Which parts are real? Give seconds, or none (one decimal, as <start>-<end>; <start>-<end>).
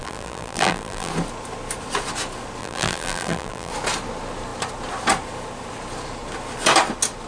1.1-2.6; 3.7-7.3